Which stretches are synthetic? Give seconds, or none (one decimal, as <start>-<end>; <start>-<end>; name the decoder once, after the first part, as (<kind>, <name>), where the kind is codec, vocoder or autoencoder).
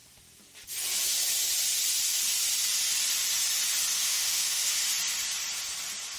3.9-4.8 (autoencoder, DAC-VAE)